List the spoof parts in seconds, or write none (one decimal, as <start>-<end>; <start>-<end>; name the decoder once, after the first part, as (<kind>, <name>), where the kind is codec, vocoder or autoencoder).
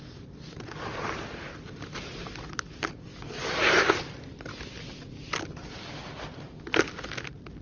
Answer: none